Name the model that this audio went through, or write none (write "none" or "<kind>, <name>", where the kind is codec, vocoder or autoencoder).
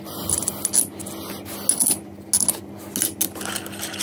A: none